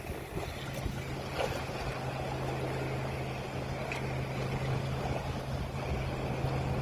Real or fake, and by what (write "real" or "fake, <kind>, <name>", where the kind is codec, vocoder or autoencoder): real